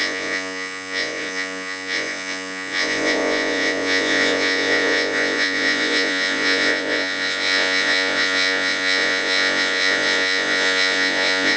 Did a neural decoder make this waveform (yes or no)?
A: yes